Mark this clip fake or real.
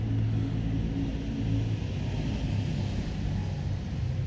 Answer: real